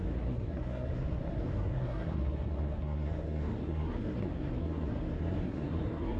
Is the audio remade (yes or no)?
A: yes